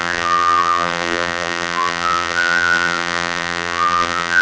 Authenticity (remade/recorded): remade